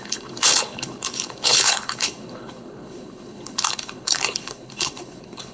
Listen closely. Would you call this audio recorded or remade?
remade